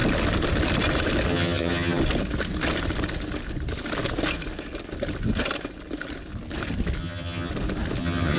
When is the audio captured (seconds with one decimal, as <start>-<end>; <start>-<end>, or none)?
0.0-1.3; 2.0-7.0; 7.5-8.0